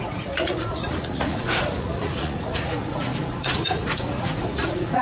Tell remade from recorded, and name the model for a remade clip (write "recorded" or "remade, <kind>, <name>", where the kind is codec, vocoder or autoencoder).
remade, vocoder, Vocos